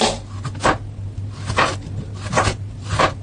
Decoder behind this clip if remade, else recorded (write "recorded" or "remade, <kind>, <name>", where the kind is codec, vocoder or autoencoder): recorded